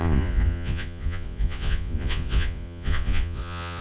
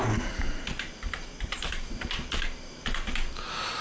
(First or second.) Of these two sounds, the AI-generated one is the first